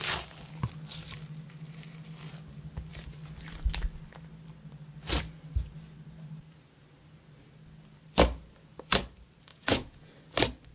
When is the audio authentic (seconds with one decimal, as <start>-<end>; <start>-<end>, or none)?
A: 0.0-9.5; 10.1-10.7